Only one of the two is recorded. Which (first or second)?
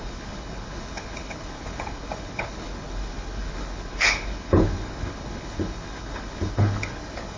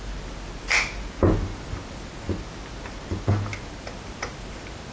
second